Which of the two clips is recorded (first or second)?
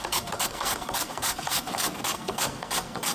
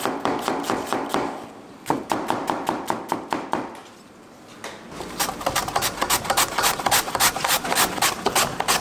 second